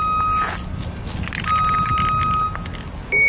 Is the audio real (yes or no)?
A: yes